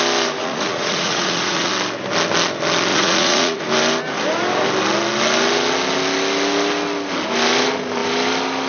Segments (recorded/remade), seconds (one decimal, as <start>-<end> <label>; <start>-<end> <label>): 0.0-0.4 recorded; 0.4-1.7 remade; 1.7-2.9 recorded; 2.9-3.6 remade; 3.6-8.7 recorded